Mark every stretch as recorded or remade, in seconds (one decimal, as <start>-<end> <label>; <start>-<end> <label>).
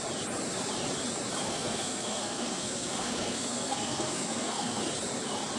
0.0-1.4 recorded; 1.4-4.8 remade; 4.8-5.6 recorded